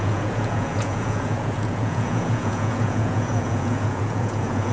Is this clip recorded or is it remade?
remade